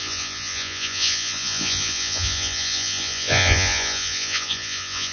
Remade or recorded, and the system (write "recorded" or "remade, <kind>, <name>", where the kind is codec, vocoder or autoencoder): remade, vocoder, Vocos